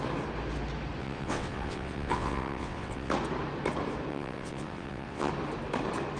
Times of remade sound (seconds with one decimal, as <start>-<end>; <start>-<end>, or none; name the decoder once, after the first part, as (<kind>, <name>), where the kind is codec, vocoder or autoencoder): 1.0-3.1 (vocoder, WaveNeXt); 4.1-5.3

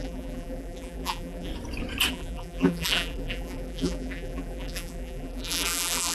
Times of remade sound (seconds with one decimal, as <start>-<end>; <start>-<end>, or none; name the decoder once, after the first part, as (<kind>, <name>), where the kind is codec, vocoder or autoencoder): 0.0-1.5 (vocoder, BigVGAN v2); 2.1-6.1

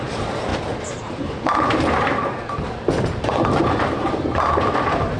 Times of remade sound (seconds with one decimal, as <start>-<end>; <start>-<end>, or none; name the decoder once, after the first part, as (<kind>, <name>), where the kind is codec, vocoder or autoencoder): none

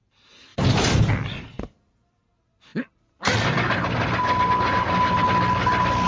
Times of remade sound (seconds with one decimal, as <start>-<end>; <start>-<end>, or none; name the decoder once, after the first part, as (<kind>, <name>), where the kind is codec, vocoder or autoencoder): 0.5-2.3 (vocoder, BigVGAN v2)

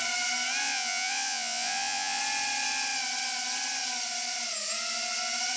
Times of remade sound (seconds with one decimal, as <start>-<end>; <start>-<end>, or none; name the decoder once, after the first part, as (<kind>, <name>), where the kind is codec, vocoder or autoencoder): 0.6-2.2 (vocoder, Vocos)